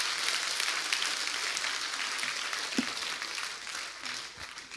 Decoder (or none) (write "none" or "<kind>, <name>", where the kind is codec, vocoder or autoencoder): none